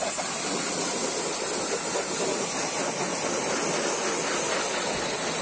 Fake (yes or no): no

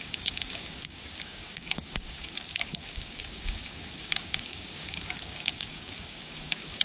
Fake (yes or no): yes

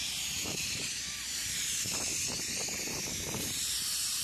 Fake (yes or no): yes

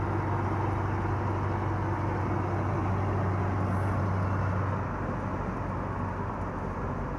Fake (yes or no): no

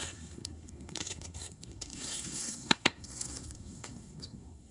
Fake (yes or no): yes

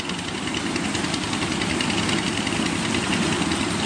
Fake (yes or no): no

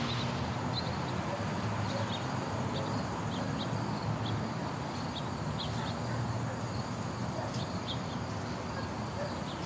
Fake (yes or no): no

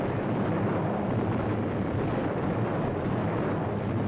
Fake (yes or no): yes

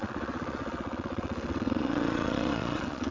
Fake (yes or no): yes